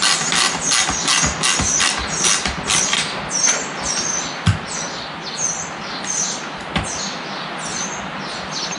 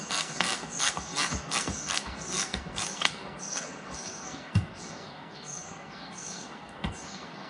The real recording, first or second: first